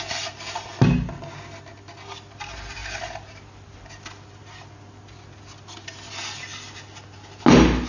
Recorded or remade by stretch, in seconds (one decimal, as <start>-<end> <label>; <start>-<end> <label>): 0.0-2.8 recorded; 2.8-3.6 remade; 3.6-7.9 recorded